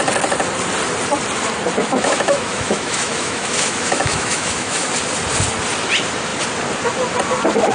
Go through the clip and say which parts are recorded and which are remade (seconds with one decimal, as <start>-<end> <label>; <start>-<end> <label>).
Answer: 0.0-1.8 recorded; 1.8-4.9 remade; 4.9-7.7 recorded